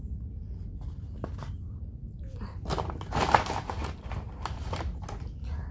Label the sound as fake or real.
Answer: real